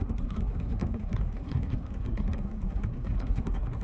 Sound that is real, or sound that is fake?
fake